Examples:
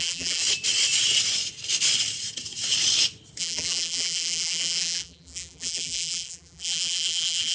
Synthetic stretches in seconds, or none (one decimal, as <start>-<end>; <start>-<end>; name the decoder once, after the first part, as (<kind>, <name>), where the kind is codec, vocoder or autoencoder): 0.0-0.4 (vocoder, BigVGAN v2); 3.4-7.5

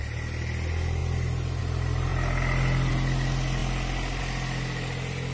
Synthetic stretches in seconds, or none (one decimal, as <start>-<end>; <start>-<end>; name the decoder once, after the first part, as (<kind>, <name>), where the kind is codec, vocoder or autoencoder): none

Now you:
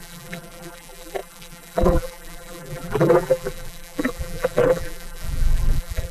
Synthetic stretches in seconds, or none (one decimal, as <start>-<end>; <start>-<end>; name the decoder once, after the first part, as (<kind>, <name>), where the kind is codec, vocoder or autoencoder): 0.0-6.1 (vocoder, BigVGAN v2)

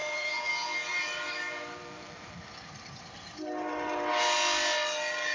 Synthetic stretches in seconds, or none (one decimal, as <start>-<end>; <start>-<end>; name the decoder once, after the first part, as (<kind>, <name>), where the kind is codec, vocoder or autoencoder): 0.0-0.5 (vocoder, BigVGAN v2); 0.9-4.1

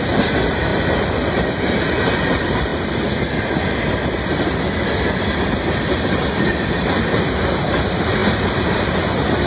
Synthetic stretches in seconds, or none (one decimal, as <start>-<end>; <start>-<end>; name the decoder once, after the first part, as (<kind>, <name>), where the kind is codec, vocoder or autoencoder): 0.0-0.7 (vocoder, BigVGAN v2); 1.3-9.5

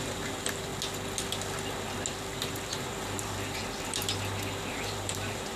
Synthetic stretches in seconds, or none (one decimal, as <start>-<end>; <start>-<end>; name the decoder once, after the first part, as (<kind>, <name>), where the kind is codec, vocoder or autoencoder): 0.0-0.7 (vocoder, BigVGAN v2); 2.5-3.6; 4.7-5.6

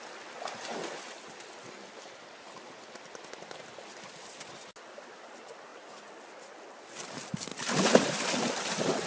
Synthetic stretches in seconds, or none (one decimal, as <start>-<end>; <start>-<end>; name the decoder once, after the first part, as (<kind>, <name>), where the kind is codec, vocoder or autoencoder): 7.5-8.1 (vocoder, BigVGAN v2)

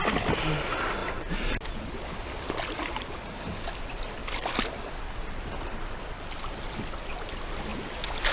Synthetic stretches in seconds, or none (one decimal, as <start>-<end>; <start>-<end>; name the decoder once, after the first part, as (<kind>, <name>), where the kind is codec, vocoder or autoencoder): none